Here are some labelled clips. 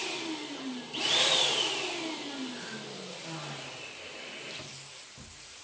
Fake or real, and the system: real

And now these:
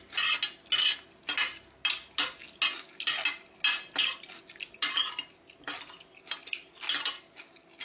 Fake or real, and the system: real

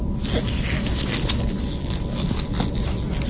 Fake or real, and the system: real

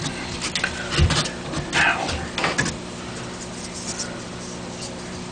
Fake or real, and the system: real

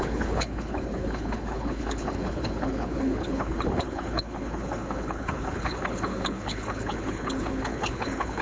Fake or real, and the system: fake, codec, HILCodec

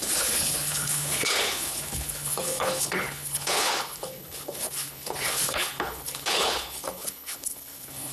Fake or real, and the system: fake, codec, HILCodec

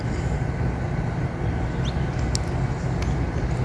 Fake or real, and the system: real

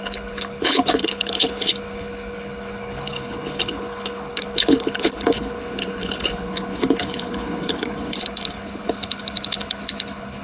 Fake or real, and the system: fake, codec, HILCodec